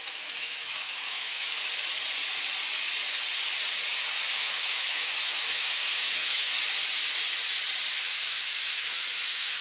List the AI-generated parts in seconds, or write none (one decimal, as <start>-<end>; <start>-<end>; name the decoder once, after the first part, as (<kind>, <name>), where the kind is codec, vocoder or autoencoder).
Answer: 0.0-1.5 (autoencoder, DAC-VAE); 4.4-6.5; 7.9-9.6